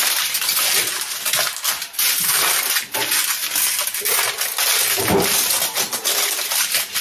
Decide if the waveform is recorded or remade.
recorded